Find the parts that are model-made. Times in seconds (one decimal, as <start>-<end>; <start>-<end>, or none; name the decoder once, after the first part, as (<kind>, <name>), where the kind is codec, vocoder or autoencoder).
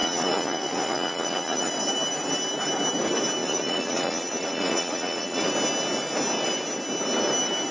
0.0-1.7 (vocoder, Vocos); 3.4-5.5